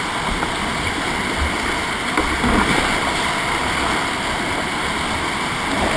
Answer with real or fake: real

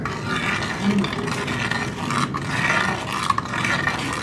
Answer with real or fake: real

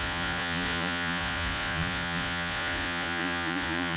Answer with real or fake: fake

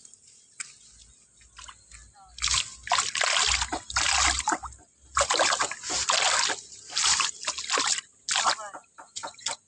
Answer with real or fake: real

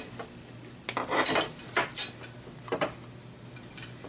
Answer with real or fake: real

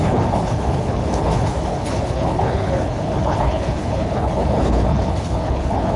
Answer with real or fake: fake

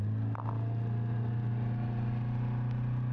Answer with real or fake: real